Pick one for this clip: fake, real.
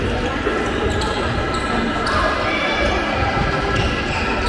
real